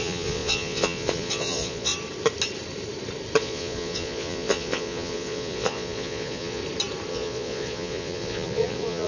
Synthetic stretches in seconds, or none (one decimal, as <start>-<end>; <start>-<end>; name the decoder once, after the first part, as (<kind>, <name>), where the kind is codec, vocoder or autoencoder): 0.0-1.9 (vocoder, Vocos); 3.4-6.6; 7.1-9.1